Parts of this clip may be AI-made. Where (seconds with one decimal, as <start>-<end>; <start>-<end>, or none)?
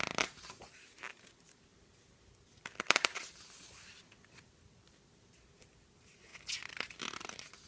1.7-5.4